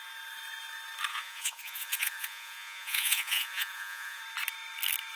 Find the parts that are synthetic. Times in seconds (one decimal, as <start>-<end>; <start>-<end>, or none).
1.1-4.2